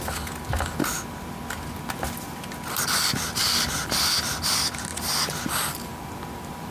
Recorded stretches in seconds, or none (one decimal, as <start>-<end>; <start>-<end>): 0.0-5.9